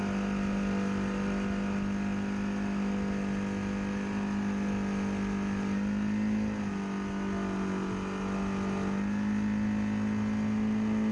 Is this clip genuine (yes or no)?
yes